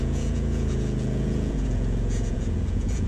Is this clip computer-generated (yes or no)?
yes